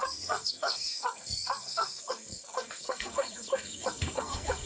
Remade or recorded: remade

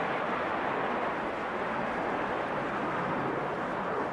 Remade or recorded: recorded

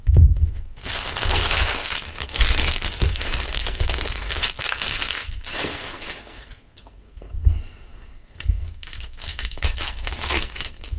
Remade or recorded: remade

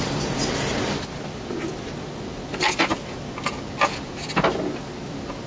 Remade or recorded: recorded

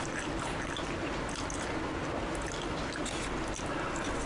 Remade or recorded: recorded